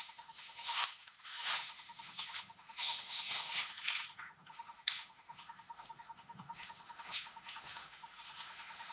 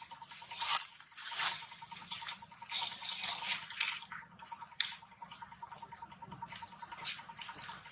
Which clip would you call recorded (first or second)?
second